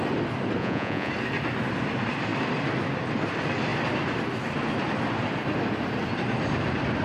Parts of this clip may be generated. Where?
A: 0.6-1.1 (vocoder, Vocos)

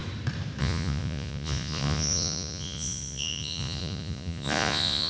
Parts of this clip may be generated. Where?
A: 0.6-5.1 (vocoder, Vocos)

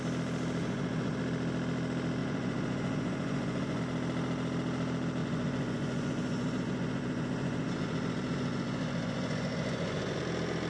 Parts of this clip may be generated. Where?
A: 0.6-1.2 (vocoder, Vocos); 2.2-3.8; 5.2-10.2

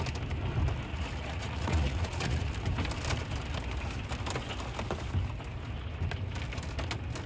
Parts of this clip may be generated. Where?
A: 0.9-2.5 (vocoder, Vocos)